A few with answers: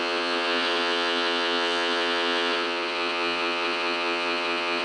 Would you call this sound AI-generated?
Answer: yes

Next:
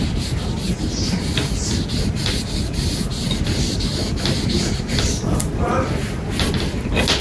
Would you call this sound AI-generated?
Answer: no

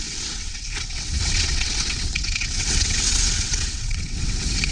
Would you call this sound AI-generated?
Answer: yes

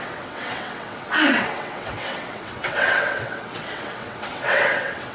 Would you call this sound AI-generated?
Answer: yes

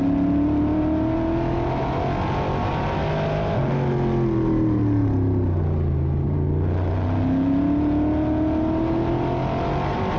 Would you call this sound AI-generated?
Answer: no